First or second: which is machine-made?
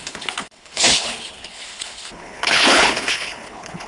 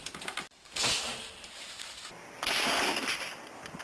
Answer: first